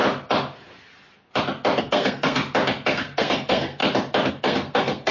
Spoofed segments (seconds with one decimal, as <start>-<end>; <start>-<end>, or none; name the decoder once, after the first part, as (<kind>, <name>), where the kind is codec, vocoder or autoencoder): 1.8-2.4 (codec, SNAC); 2.9-3.8; 4.3-5.1